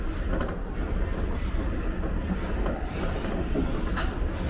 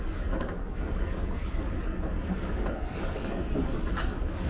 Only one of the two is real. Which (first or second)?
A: first